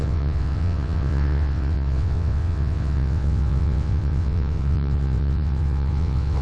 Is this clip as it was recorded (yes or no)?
no